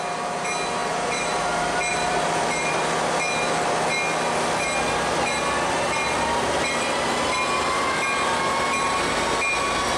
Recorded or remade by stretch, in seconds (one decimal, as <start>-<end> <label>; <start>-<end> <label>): 0.0-0.8 recorded; 0.8-1.4 remade; 1.4-1.9 recorded; 1.9-3.1 remade; 3.1-6.0 recorded; 6.0-6.9 remade; 6.9-10.0 recorded